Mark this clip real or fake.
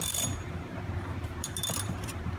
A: fake